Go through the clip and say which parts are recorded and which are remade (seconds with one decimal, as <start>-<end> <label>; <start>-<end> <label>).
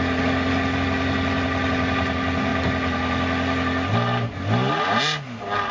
0.0-5.7 recorded